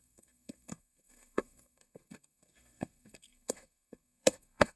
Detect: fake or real fake